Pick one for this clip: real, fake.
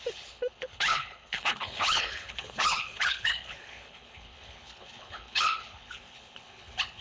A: fake